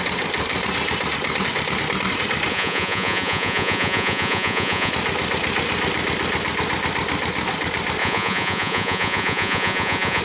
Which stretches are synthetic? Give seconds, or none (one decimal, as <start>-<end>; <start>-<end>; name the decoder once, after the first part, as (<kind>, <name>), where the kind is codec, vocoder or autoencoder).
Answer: 2.5-4.9 (vocoder, Vocos); 8.0-10.2